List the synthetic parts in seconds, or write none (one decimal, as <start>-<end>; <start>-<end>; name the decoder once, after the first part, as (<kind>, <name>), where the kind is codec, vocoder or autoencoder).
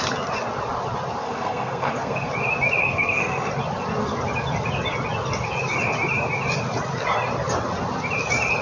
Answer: 1.2-2.3 (codec, SNAC); 2.8-3.5